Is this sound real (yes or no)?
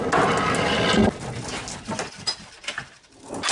yes